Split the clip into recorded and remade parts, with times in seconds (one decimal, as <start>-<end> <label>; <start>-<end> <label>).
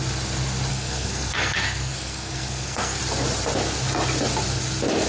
0.0-0.7 recorded; 0.7-3.0 remade; 3.0-5.1 recorded